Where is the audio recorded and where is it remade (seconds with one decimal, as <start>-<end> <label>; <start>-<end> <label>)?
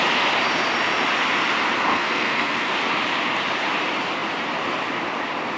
0.0-1.9 recorded; 1.9-2.7 remade; 2.7-5.6 recorded